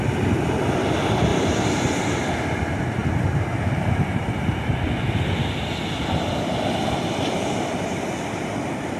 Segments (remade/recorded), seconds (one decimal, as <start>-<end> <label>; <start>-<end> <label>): 0.0-1.3 recorded; 1.3-2.6 remade; 2.6-3.0 recorded; 3.0-4.3 remade; 4.3-9.0 recorded